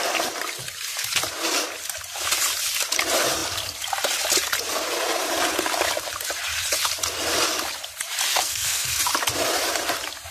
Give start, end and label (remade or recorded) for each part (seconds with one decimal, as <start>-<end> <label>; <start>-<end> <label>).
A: 0.0-8.3 recorded; 8.3-9.0 remade; 9.0-10.3 recorded